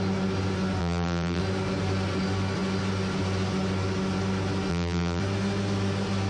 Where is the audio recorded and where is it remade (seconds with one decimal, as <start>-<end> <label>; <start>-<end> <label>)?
0.0-0.8 recorded; 0.8-1.4 remade; 1.4-4.7 recorded; 4.7-5.2 remade; 5.2-6.3 recorded